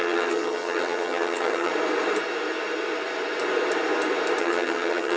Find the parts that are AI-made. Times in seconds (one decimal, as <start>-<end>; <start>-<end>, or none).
0.0-1.7; 4.4-5.2